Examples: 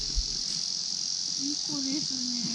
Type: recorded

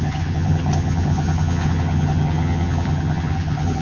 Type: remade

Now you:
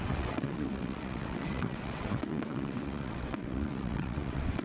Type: remade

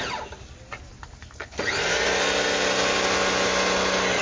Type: recorded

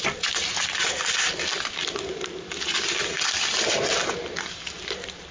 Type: recorded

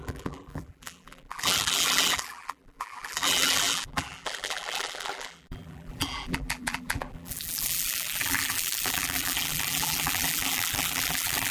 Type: remade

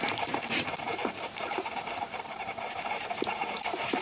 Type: remade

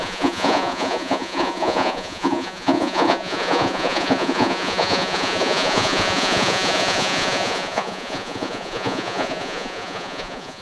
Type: remade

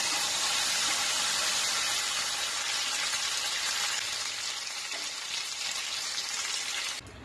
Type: recorded